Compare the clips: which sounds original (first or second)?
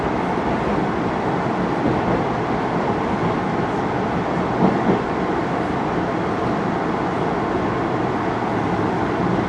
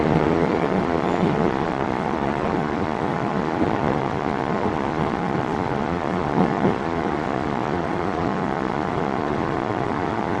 first